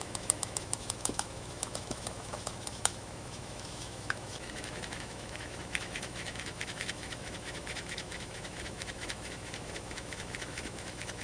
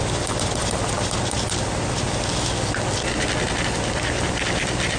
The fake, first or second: first